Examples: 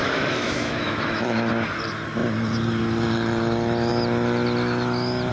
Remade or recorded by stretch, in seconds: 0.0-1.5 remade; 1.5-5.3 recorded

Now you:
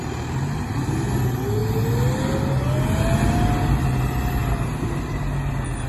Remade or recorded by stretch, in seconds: 0.0-5.9 recorded

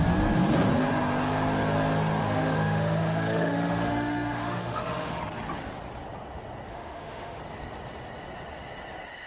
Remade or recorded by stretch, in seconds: 0.0-2.2 recorded; 2.2-5.2 remade; 5.2-6.7 recorded; 6.7-7.4 remade; 7.4-9.3 recorded

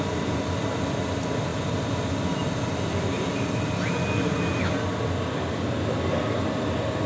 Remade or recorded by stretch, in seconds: 0.0-7.1 recorded

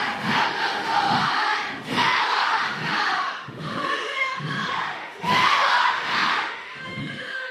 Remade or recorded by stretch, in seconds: 0.0-7.5 remade

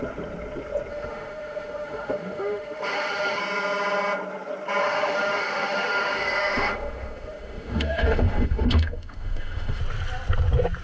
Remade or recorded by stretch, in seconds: 0.0-0.9 recorded; 0.9-3.4 remade; 3.4-4.8 recorded; 4.8-9.8 remade; 9.8-10.8 recorded

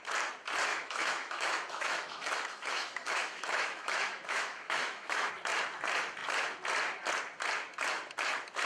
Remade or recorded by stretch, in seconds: 0.0-0.7 recorded; 0.7-5.3 remade; 5.3-8.7 recorded

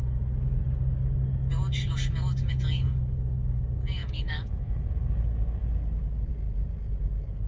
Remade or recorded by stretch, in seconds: 0.0-4.0 recorded; 4.0-4.9 remade; 4.9-7.5 recorded